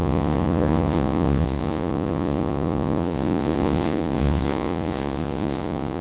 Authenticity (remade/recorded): remade